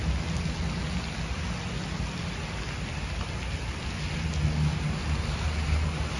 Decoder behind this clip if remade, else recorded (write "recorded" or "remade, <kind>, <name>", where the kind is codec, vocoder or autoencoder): recorded